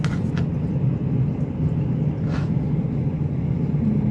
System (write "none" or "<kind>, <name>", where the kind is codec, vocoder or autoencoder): none